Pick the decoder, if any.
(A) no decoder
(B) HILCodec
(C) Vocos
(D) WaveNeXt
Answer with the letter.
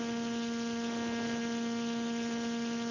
A